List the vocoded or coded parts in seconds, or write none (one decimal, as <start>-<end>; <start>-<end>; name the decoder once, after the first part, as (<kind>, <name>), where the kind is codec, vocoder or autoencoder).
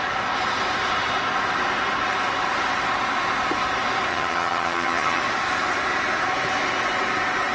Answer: 4.1-5.2 (vocoder, HiFi-GAN)